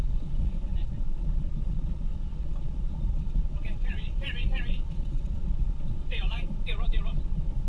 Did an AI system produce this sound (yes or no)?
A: yes